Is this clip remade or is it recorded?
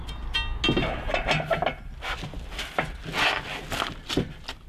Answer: recorded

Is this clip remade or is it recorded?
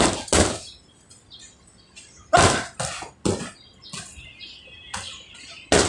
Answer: recorded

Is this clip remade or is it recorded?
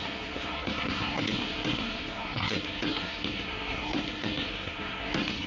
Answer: remade